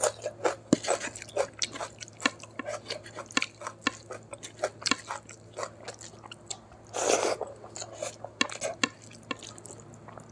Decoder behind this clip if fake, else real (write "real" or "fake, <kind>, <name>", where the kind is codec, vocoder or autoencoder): real